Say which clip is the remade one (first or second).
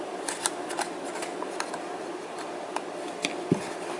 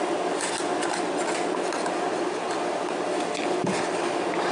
first